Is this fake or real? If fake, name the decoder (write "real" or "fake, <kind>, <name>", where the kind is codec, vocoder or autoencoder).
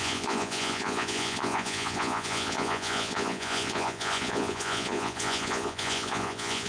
fake, vocoder, Vocos